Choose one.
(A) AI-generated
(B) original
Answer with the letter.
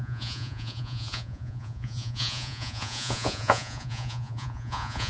A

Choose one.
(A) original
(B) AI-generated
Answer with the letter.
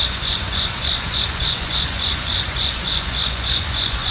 B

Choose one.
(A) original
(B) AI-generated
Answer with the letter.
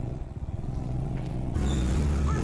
B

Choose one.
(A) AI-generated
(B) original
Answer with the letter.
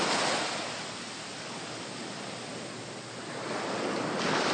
B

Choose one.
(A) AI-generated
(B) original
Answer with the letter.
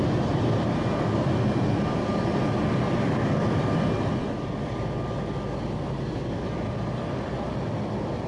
B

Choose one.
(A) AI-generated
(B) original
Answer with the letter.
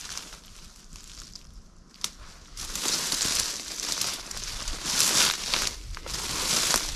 B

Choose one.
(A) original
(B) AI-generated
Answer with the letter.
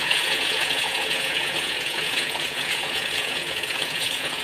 B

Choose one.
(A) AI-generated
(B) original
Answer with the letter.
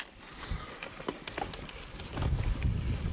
B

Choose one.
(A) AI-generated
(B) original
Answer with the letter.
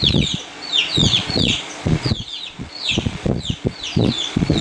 A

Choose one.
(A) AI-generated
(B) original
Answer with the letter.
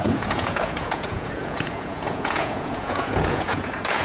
A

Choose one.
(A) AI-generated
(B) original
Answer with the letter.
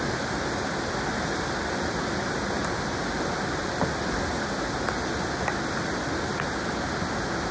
B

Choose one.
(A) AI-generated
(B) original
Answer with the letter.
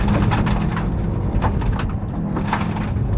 B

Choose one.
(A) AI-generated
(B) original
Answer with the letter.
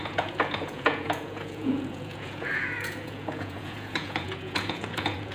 A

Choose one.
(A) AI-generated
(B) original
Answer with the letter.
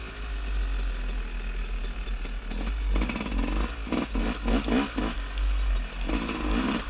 B